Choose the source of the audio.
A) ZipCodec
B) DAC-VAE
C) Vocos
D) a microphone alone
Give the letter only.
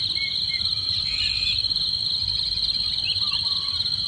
D